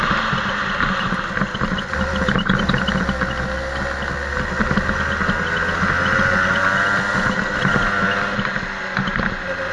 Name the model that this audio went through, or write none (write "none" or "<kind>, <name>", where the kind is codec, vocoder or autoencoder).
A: none